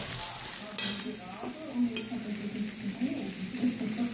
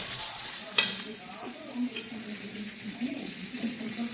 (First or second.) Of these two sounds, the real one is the first